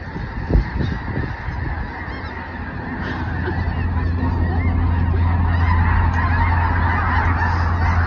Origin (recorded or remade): recorded